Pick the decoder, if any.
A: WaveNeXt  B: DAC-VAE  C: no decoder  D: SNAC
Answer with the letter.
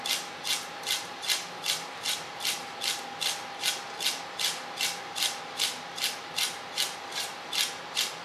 C